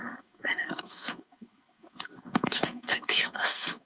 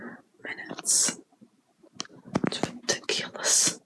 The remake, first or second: first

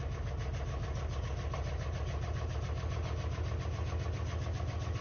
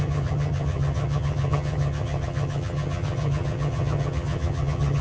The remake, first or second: second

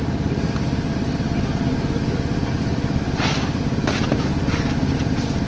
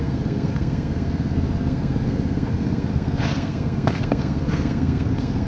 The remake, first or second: second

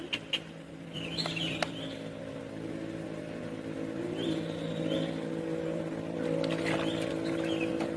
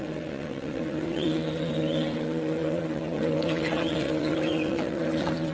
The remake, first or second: second